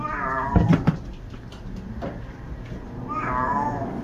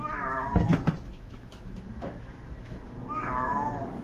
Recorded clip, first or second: first